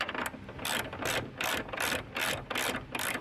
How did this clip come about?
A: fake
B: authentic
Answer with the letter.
B